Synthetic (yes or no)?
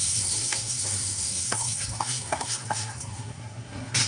yes